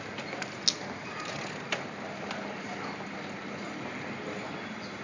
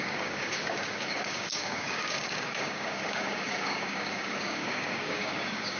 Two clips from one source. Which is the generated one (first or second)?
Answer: second